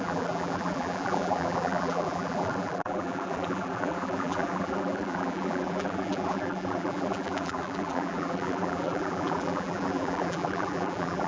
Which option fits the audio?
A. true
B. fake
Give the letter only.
B